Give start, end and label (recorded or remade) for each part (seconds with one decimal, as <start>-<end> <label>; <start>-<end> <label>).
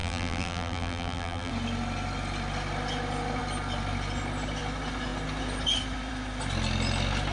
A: 0.0-1.5 remade; 1.5-7.3 recorded